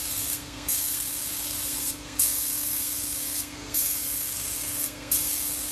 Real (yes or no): no